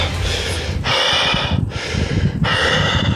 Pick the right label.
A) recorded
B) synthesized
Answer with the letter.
A